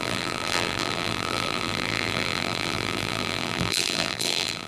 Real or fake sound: fake